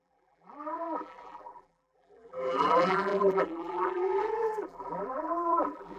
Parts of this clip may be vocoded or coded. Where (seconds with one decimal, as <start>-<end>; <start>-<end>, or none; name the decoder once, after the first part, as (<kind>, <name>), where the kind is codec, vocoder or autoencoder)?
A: 0.0-6.0 (vocoder, BigVGAN v2)